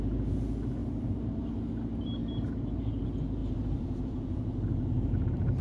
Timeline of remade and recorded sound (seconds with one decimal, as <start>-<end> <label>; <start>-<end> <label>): 0.0-0.8 recorded; 0.8-1.5 remade; 1.5-2.2 recorded; 2.2-3.0 remade; 3.0-3.4 recorded; 3.4-5.6 remade